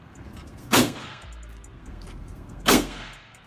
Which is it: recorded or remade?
remade